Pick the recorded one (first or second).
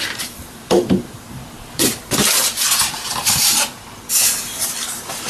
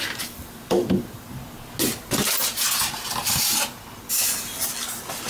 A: second